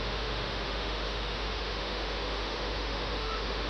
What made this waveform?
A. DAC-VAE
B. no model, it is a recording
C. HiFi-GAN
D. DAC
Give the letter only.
A